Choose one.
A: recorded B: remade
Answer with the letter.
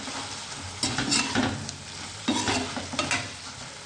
A